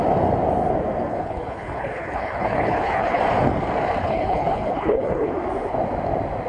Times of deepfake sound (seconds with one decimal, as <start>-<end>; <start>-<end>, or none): 1.1-3.2; 4.0-5.3